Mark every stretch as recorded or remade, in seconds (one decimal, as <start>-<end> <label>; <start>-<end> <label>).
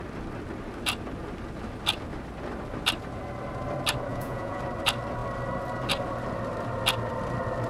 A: 0.0-4.1 recorded; 4.1-4.6 remade; 4.6-7.7 recorded